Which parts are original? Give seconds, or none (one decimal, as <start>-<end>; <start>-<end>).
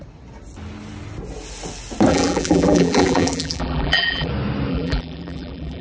0.0-2.1; 4.3-4.7